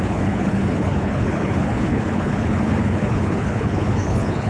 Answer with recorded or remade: remade